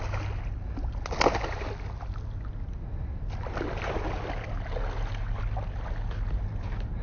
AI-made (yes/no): no